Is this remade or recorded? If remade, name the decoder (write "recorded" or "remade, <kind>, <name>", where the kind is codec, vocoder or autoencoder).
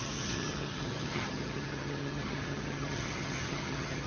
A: remade, vocoder, HiFi-GAN